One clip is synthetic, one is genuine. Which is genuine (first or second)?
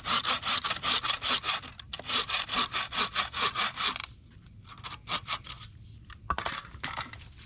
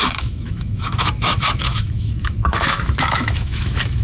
first